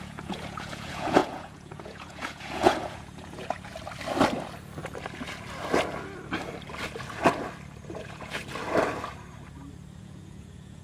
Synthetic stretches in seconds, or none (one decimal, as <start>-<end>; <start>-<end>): 0.0-3.7; 8.0-8.4; 10.0-10.8